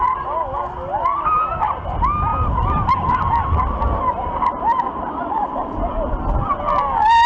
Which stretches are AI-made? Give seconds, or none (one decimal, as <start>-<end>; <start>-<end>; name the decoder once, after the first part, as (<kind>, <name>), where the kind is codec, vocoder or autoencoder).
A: none